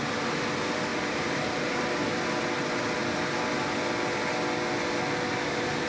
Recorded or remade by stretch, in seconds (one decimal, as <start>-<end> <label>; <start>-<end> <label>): 0.0-0.9 recorded; 0.9-2.1 remade; 2.1-5.9 recorded